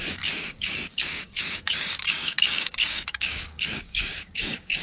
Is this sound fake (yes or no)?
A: yes